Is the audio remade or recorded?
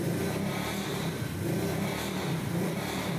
recorded